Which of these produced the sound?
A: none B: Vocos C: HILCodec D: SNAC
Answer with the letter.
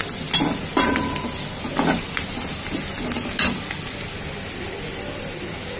A